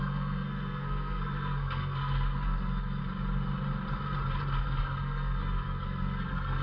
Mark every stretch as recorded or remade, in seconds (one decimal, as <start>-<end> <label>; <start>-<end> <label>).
0.0-3.0 remade; 3.0-4.6 recorded; 4.6-6.6 remade